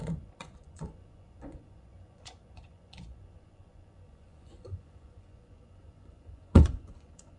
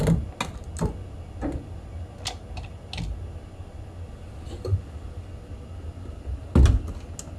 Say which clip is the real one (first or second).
second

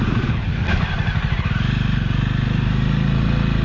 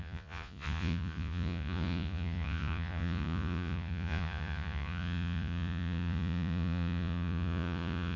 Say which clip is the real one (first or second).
first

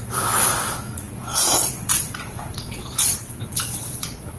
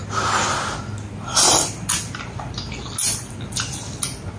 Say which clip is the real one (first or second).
second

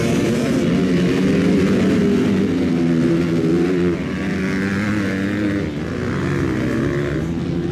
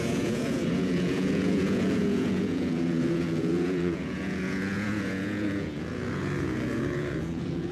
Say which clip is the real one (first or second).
first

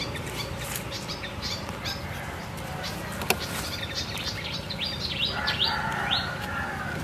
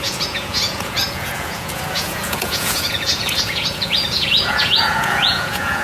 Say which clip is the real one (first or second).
first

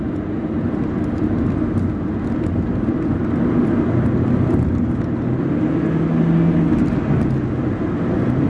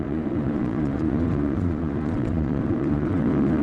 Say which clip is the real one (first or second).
first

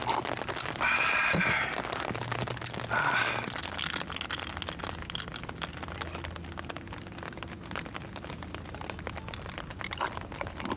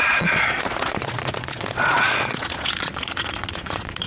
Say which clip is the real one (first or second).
first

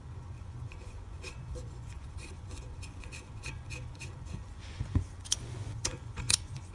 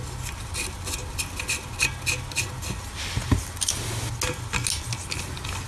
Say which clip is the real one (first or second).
second